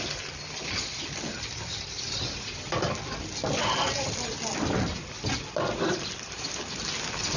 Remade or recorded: recorded